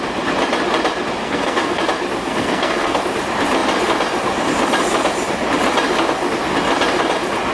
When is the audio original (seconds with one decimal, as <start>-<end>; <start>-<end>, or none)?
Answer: 0.0-1.2; 1.8-2.2; 3.0-7.5